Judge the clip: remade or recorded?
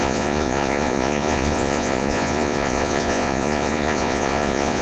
remade